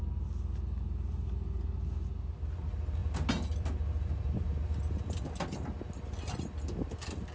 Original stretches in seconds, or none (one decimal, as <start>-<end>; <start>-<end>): 0.0-7.3